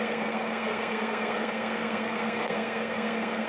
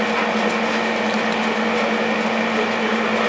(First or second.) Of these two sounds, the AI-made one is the first